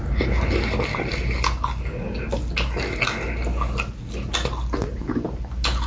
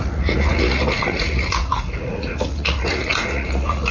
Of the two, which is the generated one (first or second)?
second